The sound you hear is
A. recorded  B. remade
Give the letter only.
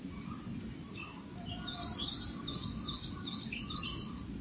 A